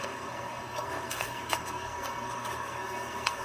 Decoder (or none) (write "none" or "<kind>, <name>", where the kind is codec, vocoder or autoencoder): codec, SNAC